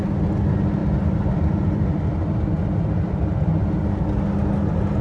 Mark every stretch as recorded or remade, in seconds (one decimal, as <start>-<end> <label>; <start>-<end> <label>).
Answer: 0.0-0.8 recorded; 0.8-3.2 remade; 3.2-5.0 recorded